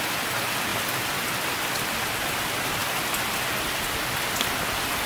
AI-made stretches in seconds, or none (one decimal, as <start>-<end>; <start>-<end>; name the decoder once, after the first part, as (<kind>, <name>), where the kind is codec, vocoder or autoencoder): none

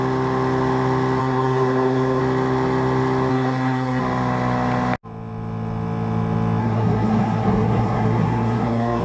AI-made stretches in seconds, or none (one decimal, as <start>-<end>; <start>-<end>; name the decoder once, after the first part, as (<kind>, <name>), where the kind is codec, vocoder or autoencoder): 1.2-2.2 (codec, SNAC); 3.3-4.0; 6.6-9.0

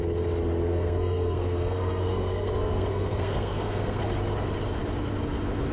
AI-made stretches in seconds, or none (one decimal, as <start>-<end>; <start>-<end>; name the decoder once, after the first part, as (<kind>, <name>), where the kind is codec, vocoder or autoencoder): 0.6-4.0 (codec, SNAC)

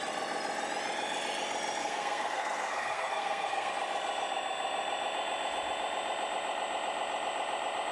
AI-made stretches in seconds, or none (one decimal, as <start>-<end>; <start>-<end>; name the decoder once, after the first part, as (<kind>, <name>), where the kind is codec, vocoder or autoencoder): 1.8-3.7 (codec, SNAC)

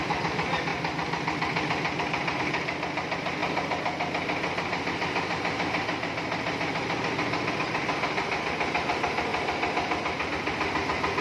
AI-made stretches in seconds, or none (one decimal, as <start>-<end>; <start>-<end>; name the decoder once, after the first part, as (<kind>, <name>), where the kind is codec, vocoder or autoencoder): none